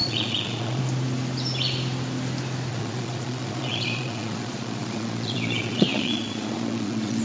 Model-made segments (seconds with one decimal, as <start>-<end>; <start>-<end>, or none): 0.0-0.8; 2.7-7.2